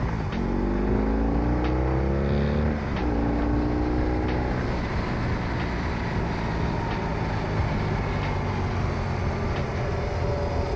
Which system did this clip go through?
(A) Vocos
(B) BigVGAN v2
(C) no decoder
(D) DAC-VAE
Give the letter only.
C